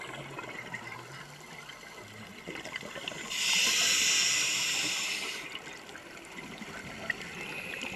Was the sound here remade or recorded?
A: recorded